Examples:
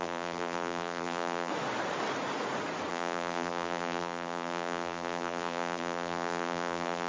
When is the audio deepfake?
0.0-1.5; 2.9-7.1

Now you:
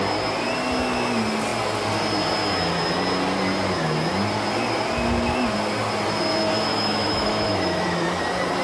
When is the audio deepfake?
6.7-8.2

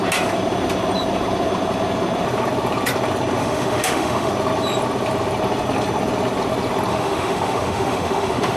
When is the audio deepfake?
3.4-4.3; 6.9-8.6

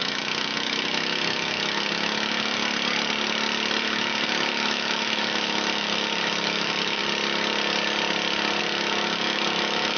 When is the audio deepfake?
0.0-2.6; 3.8-7.0; 8.6-10.0

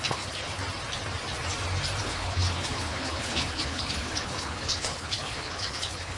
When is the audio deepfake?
0.0-0.6; 2.0-6.2

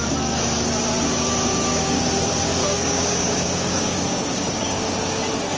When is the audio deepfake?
1.5-2.0; 2.6-4.9